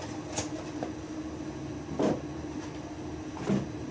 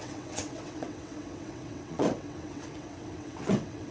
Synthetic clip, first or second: second